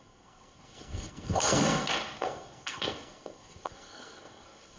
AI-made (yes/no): yes